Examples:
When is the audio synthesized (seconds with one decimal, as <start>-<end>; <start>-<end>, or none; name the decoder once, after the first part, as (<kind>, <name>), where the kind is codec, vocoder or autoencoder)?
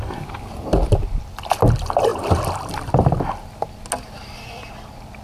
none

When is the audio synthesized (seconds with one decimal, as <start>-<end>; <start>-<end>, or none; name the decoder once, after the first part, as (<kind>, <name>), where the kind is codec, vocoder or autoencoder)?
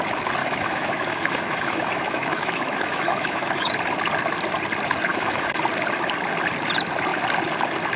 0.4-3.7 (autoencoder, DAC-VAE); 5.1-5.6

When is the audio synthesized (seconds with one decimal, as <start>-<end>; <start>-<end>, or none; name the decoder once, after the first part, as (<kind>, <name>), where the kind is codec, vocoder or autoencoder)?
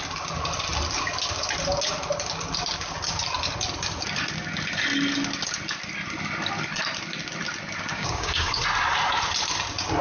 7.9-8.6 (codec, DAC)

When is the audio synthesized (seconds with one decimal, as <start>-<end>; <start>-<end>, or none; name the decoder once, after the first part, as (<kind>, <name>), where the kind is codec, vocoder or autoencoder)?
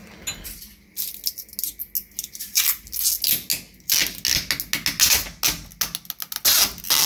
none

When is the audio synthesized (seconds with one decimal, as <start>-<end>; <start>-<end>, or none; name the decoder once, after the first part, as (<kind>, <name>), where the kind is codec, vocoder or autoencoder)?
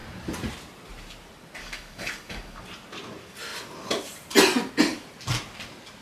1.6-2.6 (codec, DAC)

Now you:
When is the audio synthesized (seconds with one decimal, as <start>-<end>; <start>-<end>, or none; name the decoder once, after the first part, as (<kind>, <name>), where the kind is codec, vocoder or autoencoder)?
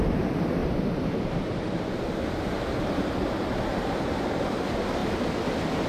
0.6-1.5 (vocoder, BigVGAN v2)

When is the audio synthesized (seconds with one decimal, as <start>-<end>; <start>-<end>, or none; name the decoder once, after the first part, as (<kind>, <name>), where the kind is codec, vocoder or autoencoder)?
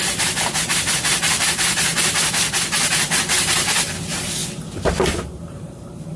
0.0-1.9 (vocoder, BigVGAN v2); 2.9-4.4; 5.3-6.2